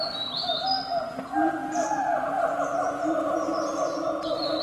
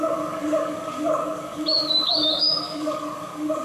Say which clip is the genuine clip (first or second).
first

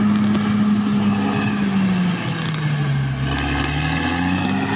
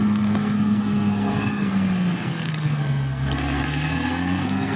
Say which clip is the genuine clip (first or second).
first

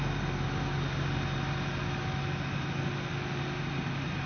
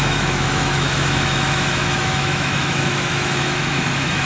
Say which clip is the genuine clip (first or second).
first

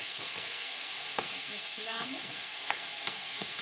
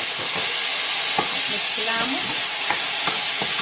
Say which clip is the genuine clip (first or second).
second